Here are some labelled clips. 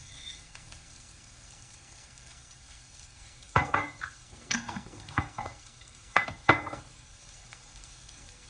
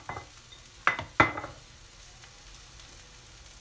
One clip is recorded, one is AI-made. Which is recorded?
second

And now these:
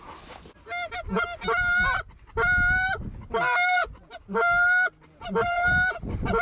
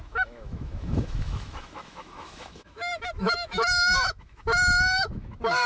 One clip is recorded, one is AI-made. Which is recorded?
first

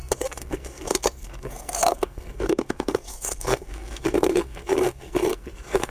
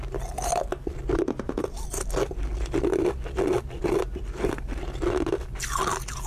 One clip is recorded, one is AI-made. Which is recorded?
second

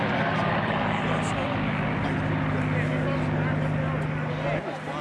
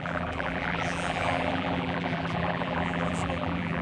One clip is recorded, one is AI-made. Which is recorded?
first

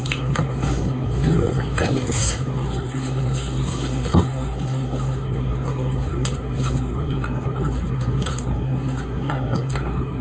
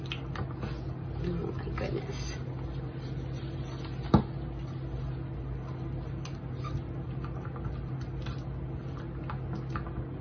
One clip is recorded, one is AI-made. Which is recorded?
second